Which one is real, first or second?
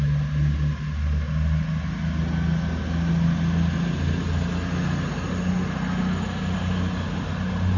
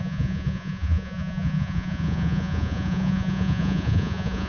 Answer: first